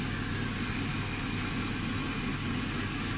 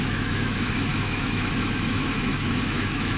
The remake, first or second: second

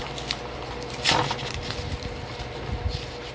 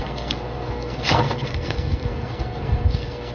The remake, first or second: second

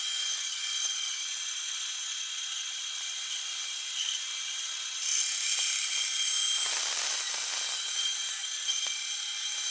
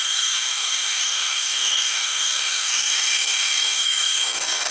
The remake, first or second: second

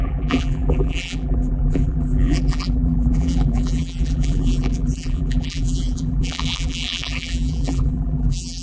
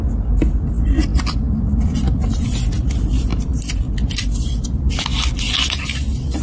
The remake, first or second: first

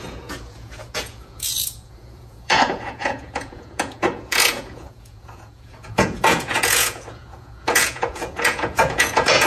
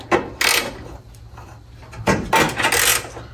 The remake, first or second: first